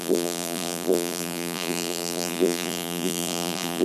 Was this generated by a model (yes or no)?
yes